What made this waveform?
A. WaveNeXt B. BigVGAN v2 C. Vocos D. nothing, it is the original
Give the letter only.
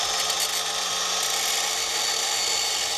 D